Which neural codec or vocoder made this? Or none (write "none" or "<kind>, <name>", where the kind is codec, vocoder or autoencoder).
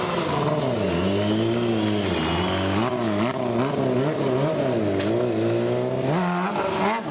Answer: none